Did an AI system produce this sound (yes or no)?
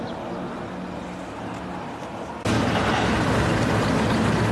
no